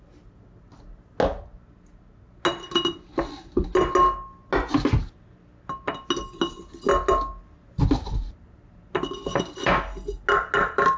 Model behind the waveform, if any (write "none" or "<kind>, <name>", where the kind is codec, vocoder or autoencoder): none